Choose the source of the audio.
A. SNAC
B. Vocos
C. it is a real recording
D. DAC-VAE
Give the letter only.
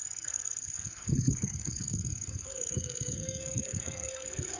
A